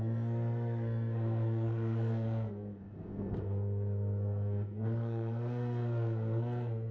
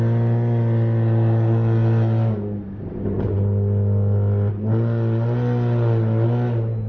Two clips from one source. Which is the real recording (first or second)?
second